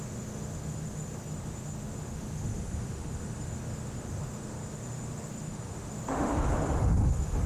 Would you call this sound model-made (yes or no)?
yes